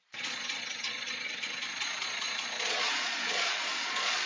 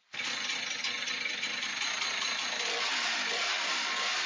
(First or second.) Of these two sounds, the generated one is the first